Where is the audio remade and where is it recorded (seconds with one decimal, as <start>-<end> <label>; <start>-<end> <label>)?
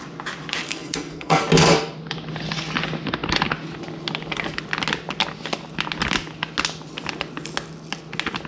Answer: 0.0-0.6 recorded; 0.6-1.4 remade; 1.4-8.5 recorded